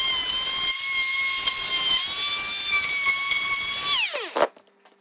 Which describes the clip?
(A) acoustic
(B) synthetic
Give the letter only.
A